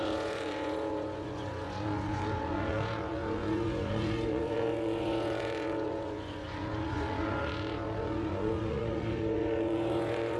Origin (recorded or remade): remade